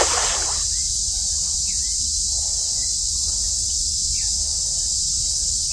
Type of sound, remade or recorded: recorded